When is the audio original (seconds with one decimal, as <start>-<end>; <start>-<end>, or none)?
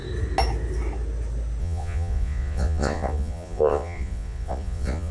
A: 0.0-1.6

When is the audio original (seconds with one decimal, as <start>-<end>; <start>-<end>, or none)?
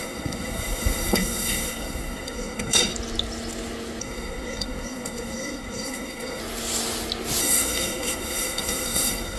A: 2.9-4.0; 6.4-7.4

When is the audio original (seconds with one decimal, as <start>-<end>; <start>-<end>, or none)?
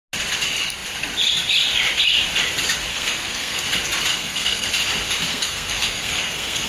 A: 0.0-2.9; 3.6-4.1; 4.7-5.3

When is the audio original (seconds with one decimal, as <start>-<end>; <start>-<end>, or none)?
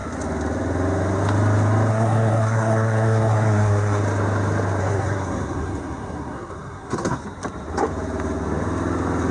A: 0.0-1.9; 4.0-4.8; 7.2-9.3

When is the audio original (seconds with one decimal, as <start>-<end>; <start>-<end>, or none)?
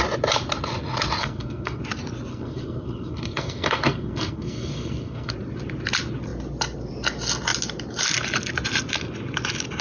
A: 0.0-1.2; 1.8-2.3; 5.3-9.8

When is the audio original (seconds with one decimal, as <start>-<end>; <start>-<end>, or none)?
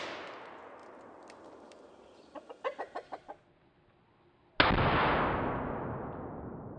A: 0.0-6.8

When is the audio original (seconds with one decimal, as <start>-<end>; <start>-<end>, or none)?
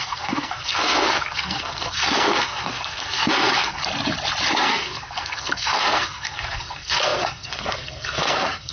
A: 3.8-4.5